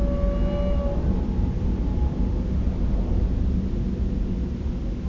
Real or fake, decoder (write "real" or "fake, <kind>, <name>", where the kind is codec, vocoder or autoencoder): real